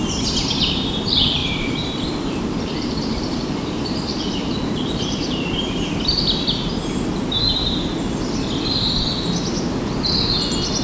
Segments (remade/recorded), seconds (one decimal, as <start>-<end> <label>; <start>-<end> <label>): 0.0-1.4 recorded; 1.4-5.9 remade; 5.9-10.8 recorded